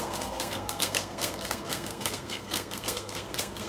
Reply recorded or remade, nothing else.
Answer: remade